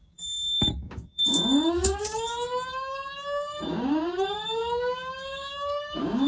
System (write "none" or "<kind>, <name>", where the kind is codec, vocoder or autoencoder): codec, DAC